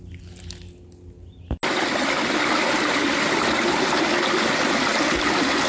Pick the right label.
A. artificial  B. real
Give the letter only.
B